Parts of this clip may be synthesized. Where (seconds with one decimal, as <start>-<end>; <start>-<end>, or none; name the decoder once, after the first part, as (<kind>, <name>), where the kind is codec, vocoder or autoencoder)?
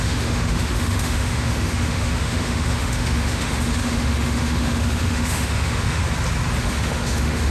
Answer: 0.0-6.0 (autoencoder, DAC-VAE); 6.6-7.5